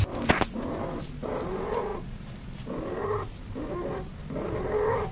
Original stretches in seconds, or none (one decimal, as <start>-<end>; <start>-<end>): 0.0-5.1